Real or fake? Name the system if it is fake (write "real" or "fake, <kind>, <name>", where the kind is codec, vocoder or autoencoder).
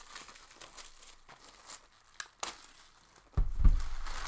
real